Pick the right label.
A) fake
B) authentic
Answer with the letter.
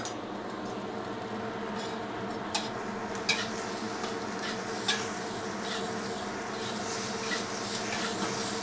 B